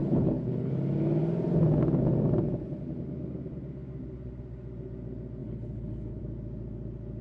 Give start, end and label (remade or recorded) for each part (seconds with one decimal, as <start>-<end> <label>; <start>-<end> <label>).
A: 0.0-0.7 remade; 0.7-5.4 recorded; 5.4-6.2 remade; 6.2-7.2 recorded